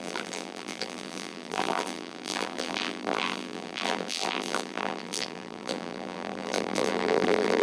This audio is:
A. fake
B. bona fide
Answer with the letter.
A